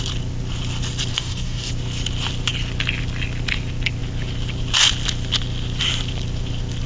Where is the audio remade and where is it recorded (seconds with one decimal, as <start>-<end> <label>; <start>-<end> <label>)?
0.0-1.1 recorded; 1.1-1.7 remade; 1.7-6.9 recorded